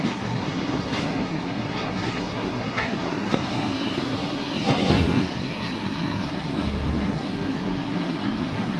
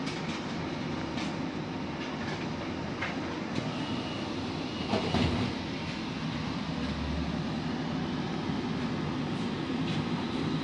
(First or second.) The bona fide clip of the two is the second